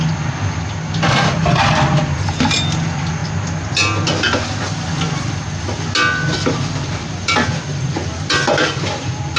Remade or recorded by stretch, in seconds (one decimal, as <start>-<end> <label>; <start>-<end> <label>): 0.0-9.4 recorded